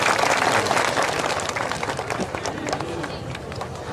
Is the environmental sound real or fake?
real